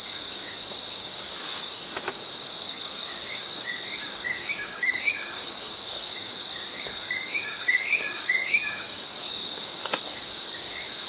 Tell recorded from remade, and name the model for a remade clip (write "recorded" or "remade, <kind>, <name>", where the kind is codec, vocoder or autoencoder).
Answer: remade, codec, DAC